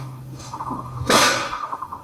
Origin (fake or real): fake